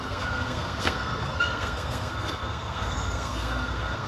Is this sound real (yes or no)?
no